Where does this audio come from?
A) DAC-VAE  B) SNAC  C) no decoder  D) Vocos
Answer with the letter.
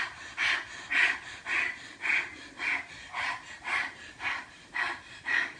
C